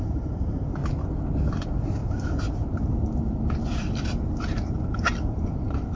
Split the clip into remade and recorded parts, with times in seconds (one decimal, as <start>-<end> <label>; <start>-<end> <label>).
0.0-0.8 remade; 0.8-1.5 recorded; 1.5-6.0 remade